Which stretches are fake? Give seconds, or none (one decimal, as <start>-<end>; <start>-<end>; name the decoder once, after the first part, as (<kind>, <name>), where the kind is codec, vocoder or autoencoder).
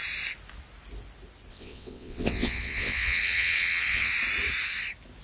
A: 1.5-4.1 (vocoder, WaveNeXt)